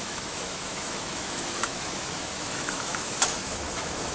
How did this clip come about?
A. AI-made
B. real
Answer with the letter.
A